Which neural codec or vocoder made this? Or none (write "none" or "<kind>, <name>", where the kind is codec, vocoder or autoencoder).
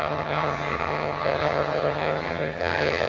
vocoder, HiFi-GAN